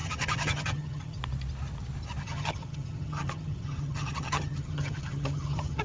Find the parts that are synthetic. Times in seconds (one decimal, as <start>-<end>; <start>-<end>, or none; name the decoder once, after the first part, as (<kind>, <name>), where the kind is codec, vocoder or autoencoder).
0.0-1.2 (vocoder, HiFi-GAN); 2.2-5.8